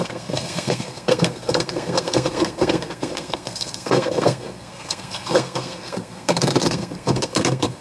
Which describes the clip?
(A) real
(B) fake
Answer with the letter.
B